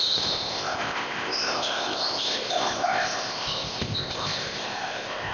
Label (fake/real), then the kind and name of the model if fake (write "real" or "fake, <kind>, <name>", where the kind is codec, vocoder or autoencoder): fake, codec, ZipCodec